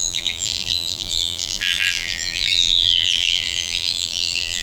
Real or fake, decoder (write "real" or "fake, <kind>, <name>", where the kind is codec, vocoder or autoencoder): fake, vocoder, BigVGAN v2